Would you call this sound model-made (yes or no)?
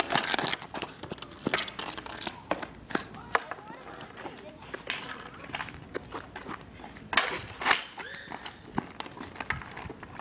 no